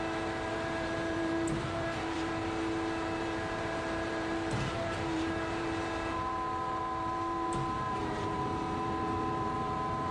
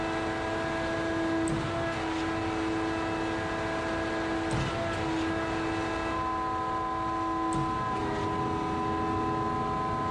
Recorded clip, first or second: second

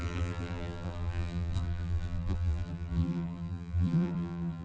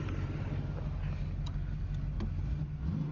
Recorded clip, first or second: second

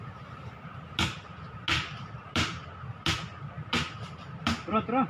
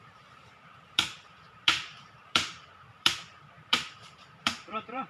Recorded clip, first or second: first